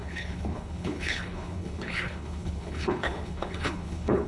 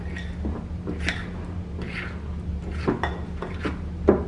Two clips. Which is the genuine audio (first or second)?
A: second